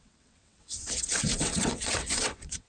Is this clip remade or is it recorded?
remade